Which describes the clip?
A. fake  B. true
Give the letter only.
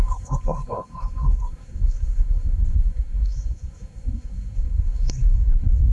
A